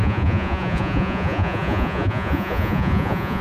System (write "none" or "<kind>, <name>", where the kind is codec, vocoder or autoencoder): vocoder, Vocos